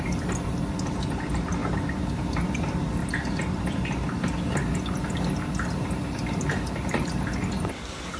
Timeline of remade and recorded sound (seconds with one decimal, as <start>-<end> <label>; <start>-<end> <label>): 0.0-8.2 recorded